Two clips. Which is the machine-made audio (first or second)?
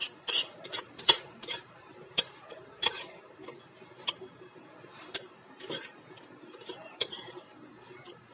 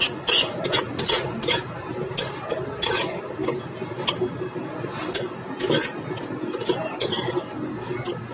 first